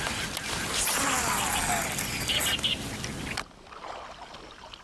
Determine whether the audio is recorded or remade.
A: recorded